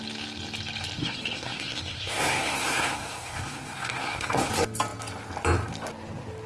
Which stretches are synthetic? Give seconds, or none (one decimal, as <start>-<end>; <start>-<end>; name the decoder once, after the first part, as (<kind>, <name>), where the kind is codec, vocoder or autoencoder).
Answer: 1.0-4.5 (codec, SNAC)